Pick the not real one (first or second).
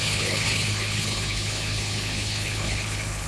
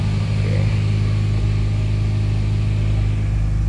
first